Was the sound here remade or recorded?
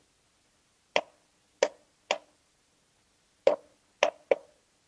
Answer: recorded